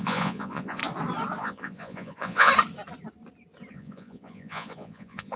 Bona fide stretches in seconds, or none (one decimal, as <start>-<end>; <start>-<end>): 0.8-1.4; 2.5-3.7